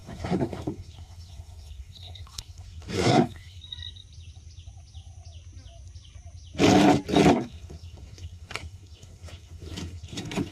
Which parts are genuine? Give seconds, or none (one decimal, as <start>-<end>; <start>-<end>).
3.6-7.3

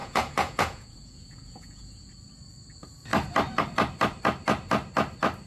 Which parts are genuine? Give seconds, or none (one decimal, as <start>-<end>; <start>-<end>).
2.1-5.5

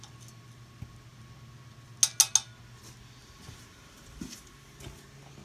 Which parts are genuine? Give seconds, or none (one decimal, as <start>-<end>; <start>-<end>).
0.0-3.2; 4.8-5.4

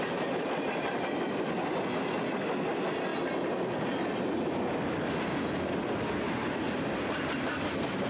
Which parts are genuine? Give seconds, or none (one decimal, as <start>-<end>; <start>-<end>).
0.0-8.1

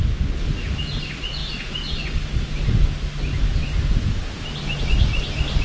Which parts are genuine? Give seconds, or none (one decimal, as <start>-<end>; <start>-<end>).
0.0-5.6